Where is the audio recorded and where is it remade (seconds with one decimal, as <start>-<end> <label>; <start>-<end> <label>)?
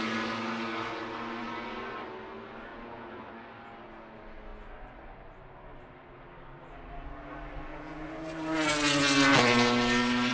0.0-2.7 recorded; 2.7-3.2 remade; 3.2-7.7 recorded; 7.7-8.3 remade; 8.3-10.3 recorded